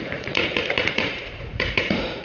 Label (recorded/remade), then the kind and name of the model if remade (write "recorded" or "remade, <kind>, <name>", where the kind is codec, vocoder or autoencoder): remade, vocoder, Vocos